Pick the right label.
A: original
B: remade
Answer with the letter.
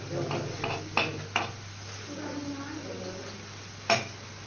A